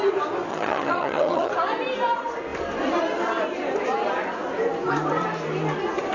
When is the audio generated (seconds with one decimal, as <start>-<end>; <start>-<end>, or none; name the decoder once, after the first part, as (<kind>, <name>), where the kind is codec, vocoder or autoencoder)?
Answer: 0.5-1.5 (vocoder, HiFi-GAN)